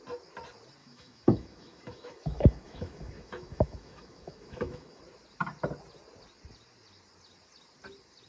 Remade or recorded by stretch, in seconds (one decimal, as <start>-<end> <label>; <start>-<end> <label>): 0.0-0.8 recorded; 0.8-5.0 remade; 5.0-8.3 recorded